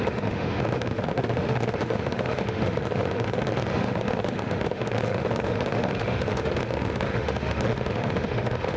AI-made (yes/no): yes